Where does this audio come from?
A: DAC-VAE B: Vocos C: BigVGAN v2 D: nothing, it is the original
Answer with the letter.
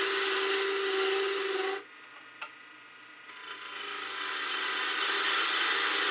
D